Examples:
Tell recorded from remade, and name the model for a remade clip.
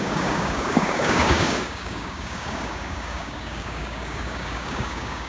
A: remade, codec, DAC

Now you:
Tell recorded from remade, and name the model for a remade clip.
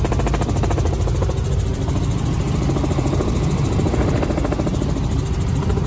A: recorded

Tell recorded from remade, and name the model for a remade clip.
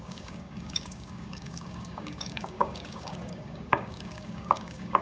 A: remade, codec, DAC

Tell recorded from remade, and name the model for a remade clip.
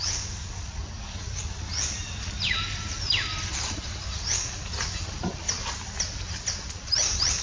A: recorded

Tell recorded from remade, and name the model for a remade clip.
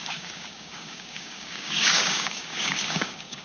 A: remade, codec, DAC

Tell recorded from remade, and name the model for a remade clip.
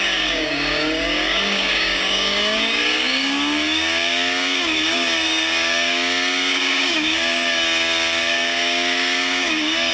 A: remade, codec, DAC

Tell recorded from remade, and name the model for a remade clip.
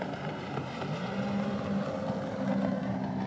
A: recorded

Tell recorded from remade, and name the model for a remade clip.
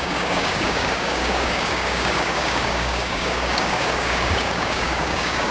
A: remade, codec, DAC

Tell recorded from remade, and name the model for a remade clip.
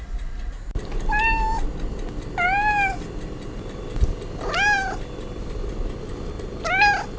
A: recorded